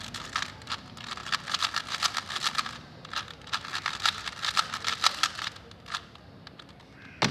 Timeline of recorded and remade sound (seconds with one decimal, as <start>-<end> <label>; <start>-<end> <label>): 0.0-7.3 recorded